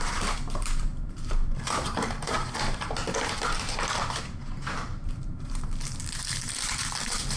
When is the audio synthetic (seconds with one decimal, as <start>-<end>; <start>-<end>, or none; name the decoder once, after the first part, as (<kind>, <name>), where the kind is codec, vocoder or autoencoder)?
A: 0.0-3.0 (vocoder, BigVGAN v2); 3.5-7.4